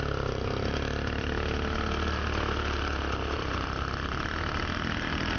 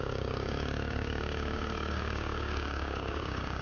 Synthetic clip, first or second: second